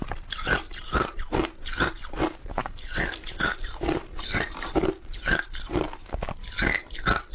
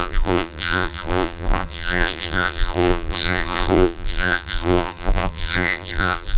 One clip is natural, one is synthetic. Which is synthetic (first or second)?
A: second